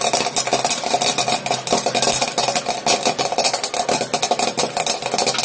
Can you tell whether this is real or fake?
real